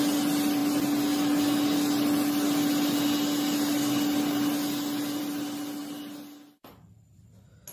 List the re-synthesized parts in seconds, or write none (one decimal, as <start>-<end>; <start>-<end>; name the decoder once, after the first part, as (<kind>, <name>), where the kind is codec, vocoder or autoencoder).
none